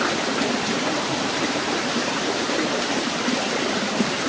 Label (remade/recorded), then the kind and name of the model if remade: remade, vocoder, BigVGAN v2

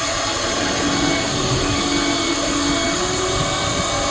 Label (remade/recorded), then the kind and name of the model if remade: recorded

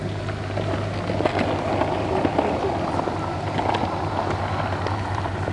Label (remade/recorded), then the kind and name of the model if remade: recorded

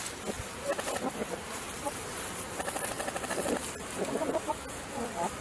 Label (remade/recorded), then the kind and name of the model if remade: recorded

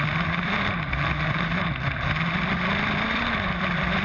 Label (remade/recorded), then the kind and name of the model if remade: remade, vocoder, BigVGAN v2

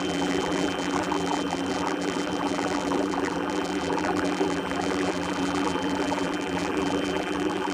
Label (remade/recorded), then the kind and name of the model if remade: remade, vocoder, BigVGAN v2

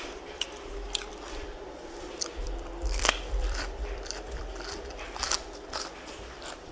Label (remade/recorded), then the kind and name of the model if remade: remade, vocoder, BigVGAN v2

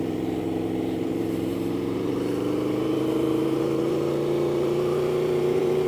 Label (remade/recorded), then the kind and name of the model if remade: remade, vocoder, BigVGAN v2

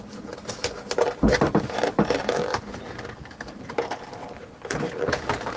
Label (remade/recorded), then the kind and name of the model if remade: remade, vocoder, BigVGAN v2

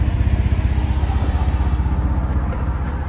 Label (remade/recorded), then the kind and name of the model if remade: remade, vocoder, BigVGAN v2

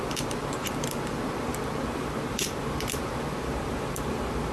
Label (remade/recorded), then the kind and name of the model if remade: remade, vocoder, BigVGAN v2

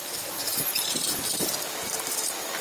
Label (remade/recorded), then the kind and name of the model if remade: recorded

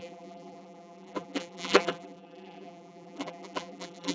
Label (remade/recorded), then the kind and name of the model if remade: remade, vocoder, BigVGAN v2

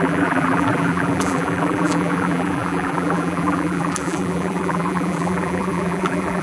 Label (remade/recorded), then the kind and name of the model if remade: remade, vocoder, BigVGAN v2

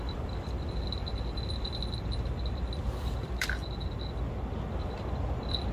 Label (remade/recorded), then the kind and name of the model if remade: recorded